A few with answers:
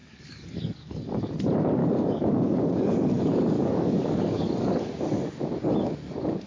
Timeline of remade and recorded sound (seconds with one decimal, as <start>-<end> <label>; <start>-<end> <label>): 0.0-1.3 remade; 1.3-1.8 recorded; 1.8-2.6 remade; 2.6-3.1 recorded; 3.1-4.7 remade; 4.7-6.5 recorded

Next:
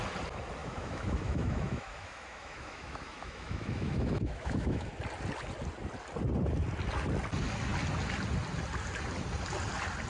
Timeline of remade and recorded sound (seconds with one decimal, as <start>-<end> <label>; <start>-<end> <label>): 0.0-0.6 recorded; 0.6-4.9 remade; 4.9-10.1 recorded

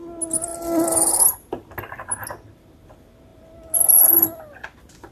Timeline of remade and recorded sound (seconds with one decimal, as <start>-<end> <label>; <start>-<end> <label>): 0.0-5.1 recorded

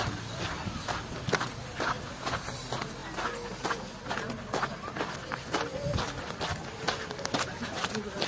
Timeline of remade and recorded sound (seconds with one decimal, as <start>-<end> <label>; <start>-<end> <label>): 0.0-8.3 recorded